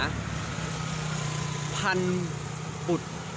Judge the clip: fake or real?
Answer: real